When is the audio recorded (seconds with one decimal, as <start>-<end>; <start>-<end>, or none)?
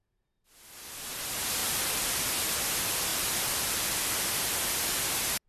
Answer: 0.0-1.6; 2.3-3.1; 4.7-5.5